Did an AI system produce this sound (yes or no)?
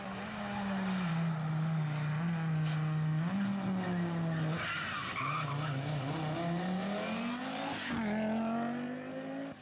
no